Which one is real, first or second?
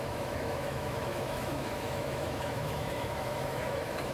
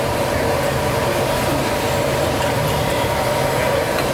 second